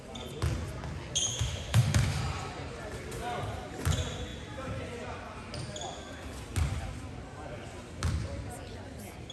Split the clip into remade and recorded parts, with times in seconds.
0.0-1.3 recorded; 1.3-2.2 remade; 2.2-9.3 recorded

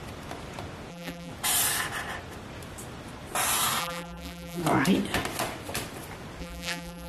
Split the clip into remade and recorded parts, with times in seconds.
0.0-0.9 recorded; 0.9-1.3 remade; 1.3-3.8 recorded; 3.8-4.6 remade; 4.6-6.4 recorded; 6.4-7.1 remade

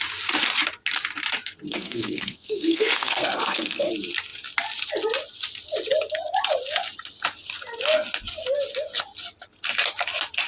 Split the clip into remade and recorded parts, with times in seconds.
0.0-1.7 recorded; 1.7-3.9 remade; 3.9-10.5 recorded